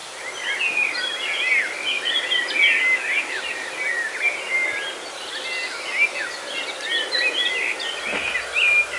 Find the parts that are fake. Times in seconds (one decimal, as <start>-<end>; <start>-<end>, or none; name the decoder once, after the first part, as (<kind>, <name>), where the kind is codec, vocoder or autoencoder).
none